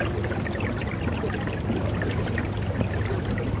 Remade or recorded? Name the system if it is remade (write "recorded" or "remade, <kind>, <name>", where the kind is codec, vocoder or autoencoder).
recorded